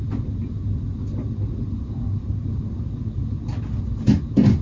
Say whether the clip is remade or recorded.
recorded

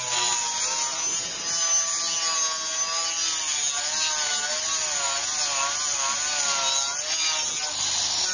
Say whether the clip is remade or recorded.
recorded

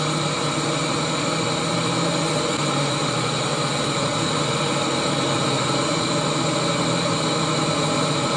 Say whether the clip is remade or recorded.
recorded